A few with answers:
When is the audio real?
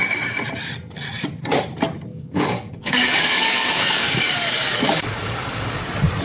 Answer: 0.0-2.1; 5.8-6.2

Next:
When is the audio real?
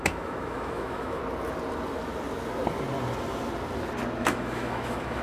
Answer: 1.2-4.2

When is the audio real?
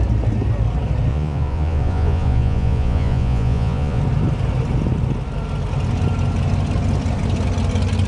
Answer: 0.0-1.1; 4.0-8.1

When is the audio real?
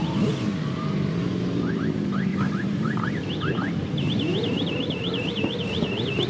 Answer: 0.0-2.3; 3.1-4.3; 5.3-6.3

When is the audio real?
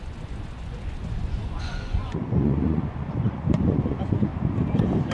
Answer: 4.3-5.1